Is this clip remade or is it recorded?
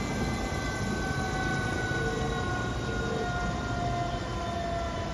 recorded